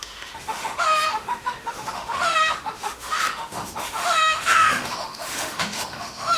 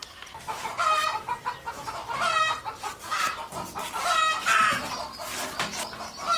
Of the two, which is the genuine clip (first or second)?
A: second